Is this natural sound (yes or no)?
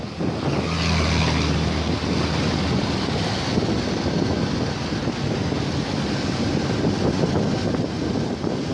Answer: yes